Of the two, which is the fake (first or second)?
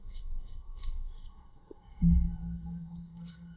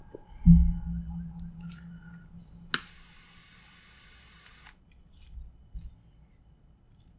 first